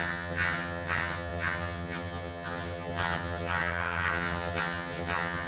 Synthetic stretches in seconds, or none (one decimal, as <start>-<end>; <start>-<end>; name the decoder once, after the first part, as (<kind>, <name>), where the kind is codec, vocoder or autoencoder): 0.0-5.5 (vocoder, HiFi-GAN)